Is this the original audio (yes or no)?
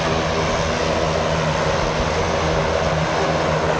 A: yes